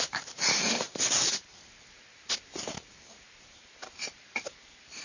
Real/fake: fake